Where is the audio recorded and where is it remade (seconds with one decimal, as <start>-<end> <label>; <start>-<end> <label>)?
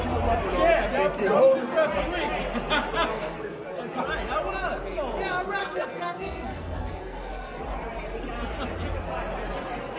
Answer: 0.0-3.1 recorded; 3.1-3.8 remade; 3.8-5.6 recorded; 5.6-7.6 remade; 7.6-10.0 recorded